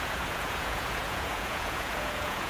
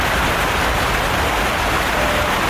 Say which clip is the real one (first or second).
second